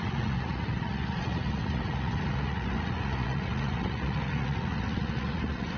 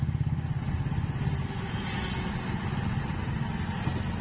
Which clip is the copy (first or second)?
first